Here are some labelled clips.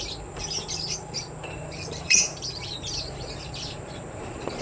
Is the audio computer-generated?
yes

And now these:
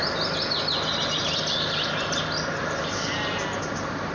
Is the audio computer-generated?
no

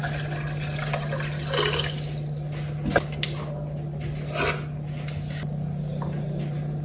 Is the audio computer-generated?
no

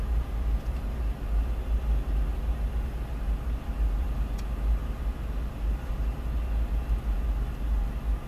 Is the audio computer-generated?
no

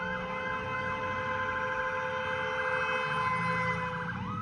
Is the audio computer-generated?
no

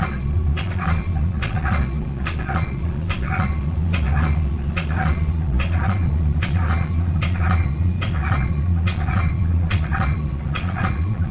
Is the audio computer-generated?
yes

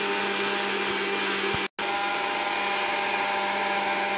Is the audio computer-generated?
no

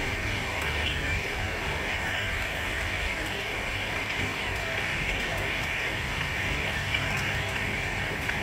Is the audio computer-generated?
yes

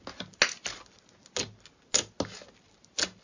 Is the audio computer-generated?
no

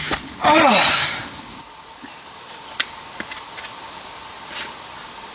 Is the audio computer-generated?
no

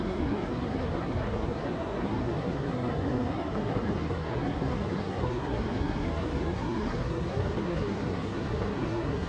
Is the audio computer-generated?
yes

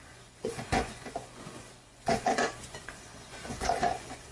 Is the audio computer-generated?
yes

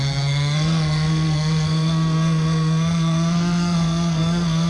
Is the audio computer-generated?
yes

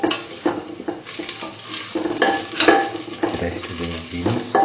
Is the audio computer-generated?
no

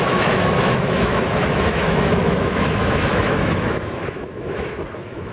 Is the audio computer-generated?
yes